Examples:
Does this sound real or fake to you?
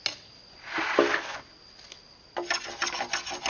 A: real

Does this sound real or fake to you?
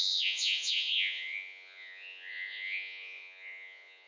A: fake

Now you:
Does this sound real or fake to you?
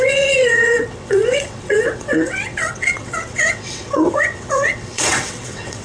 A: fake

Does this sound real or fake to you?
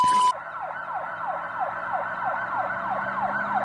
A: real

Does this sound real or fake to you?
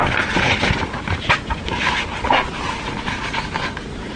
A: real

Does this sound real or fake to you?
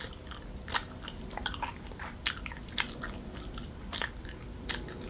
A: fake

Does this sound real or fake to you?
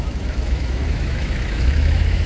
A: fake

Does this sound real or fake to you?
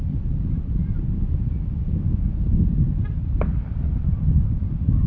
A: real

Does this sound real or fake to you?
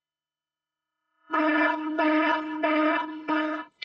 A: fake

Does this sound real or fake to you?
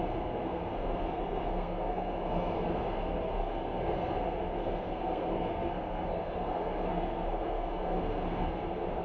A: fake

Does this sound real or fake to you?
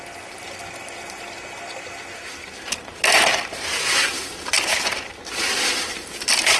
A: real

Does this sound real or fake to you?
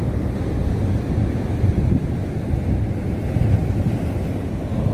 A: real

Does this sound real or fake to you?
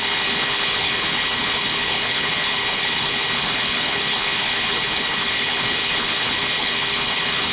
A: fake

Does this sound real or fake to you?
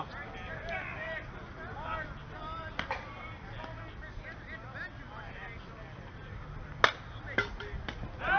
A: real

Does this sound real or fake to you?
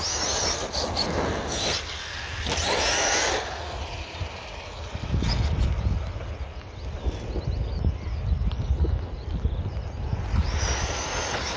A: real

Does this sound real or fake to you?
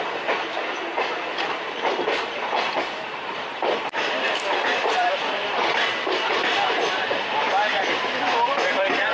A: fake